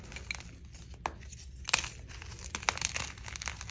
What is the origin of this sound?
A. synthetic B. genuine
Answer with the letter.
B